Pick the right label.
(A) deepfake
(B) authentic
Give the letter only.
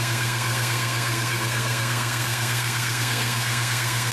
A